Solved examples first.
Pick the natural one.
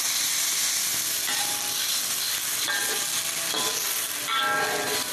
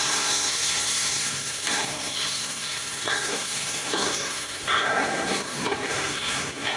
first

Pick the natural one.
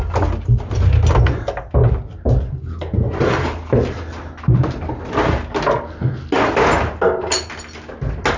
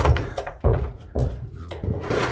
first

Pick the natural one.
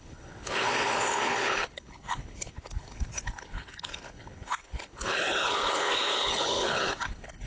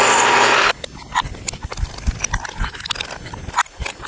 second